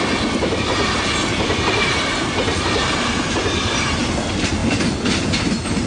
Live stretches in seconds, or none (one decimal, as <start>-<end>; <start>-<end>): 0.0-5.9